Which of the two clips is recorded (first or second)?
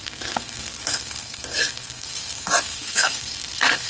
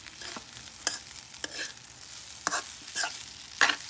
second